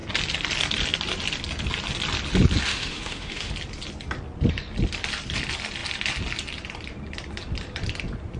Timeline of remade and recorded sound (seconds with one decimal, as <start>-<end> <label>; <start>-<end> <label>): 0.0-2.7 recorded; 2.7-3.5 remade; 3.5-8.4 recorded